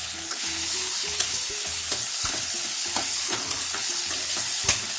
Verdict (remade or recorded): remade